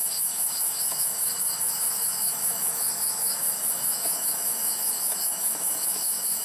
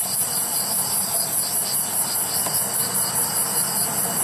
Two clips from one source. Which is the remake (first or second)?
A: first